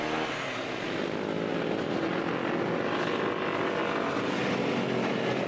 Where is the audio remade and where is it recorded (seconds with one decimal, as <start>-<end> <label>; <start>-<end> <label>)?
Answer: 0.0-5.5 recorded